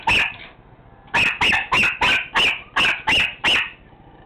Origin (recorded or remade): recorded